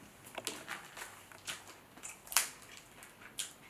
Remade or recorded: recorded